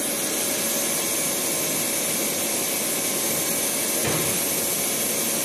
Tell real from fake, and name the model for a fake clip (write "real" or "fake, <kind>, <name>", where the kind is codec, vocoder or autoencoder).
real